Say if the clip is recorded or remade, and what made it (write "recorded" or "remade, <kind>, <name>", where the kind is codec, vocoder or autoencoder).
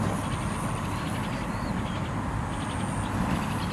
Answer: recorded